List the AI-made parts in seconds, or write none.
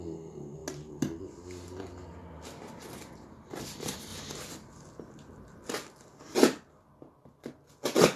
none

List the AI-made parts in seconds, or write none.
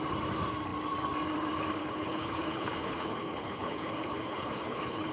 1.8-5.1 (codec, HILCodec)